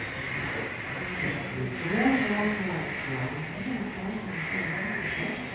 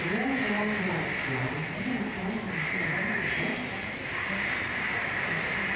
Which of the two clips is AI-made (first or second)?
second